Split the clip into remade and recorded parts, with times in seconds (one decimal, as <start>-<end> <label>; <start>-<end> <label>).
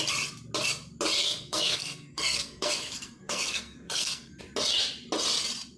0.0-1.2 recorded; 1.2-4.4 remade; 4.4-5.8 recorded